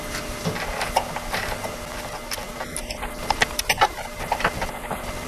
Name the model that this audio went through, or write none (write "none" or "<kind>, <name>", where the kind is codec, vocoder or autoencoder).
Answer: none